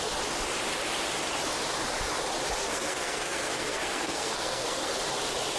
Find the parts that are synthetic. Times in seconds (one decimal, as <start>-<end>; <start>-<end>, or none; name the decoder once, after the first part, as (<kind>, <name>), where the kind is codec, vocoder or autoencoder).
2.6-4.9 (codec, SNAC)